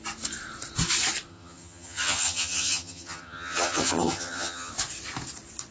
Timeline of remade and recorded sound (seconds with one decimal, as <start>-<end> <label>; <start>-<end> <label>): 0.0-1.3 recorded; 1.3-4.7 remade; 4.7-5.7 recorded